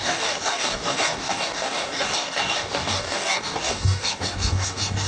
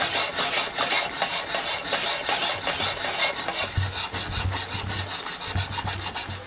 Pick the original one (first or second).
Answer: second